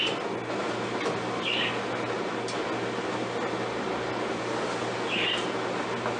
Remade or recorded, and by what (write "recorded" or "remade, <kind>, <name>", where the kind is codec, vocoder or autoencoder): recorded